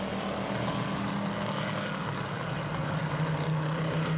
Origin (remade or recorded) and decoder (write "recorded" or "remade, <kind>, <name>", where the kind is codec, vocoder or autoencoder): recorded